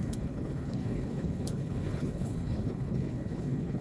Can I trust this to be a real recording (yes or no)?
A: no